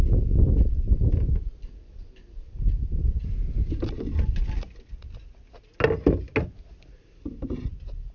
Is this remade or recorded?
recorded